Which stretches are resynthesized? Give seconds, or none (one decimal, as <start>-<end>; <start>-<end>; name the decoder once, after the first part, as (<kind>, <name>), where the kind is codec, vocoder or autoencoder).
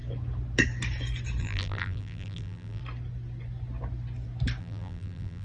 1.4-2.8 (vocoder, BigVGAN v2); 4.6-5.4